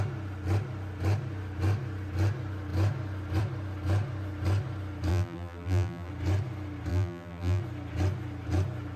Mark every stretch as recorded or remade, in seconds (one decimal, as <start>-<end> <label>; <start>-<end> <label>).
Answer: 0.0-5.1 recorded; 5.1-6.1 remade; 6.1-6.9 recorded; 6.9-7.6 remade; 7.6-9.0 recorded